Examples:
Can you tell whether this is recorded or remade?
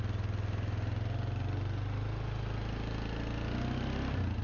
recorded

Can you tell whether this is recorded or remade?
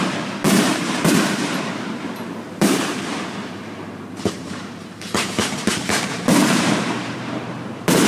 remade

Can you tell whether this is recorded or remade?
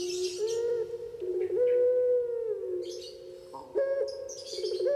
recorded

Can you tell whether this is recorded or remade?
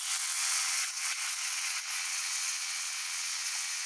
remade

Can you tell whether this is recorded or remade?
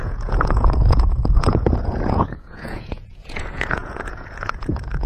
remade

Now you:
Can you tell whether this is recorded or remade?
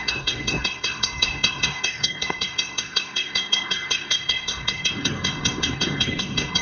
remade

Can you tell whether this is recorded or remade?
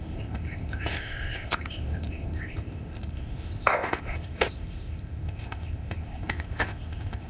remade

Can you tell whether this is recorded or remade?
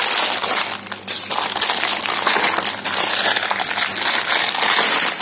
recorded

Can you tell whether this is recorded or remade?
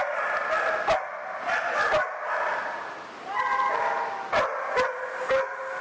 recorded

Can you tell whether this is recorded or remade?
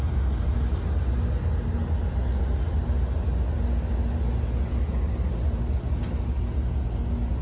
recorded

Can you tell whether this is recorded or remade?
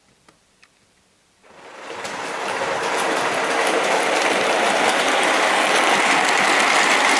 remade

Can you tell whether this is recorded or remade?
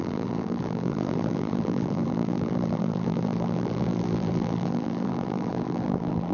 remade